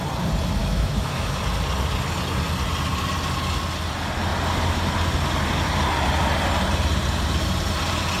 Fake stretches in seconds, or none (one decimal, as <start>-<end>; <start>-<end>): 0.6-1.4